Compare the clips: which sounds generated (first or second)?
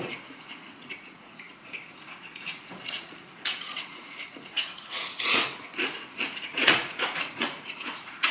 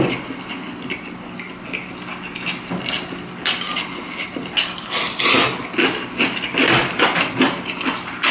first